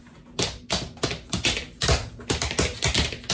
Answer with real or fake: real